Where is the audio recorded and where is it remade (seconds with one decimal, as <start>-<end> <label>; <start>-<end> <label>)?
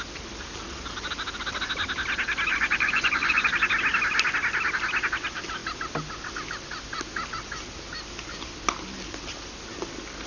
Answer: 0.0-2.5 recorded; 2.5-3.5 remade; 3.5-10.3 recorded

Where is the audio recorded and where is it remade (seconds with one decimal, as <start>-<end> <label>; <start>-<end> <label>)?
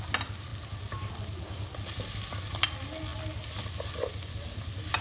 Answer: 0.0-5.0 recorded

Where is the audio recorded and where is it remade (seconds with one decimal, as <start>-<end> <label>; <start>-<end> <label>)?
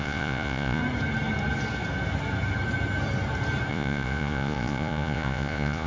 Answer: 0.0-0.8 remade; 0.8-3.7 recorded; 3.7-5.9 remade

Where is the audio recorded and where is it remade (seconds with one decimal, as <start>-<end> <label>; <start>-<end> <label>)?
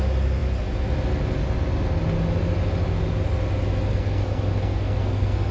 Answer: 0.0-3.9 recorded; 3.9-5.5 remade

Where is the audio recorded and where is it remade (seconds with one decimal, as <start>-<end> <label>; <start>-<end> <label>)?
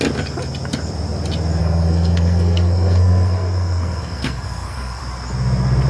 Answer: 0.0-1.6 recorded; 1.6-5.0 remade; 5.0-5.9 recorded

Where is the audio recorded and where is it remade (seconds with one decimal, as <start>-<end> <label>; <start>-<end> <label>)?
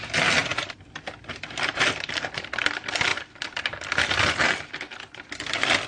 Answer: 0.0-3.1 recorded; 3.1-4.8 remade; 4.8-5.9 recorded